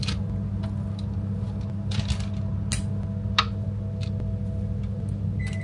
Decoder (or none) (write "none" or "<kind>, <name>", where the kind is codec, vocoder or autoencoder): none